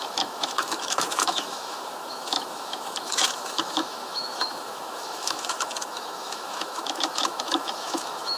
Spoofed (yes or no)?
yes